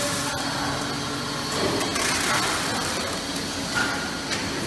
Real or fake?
real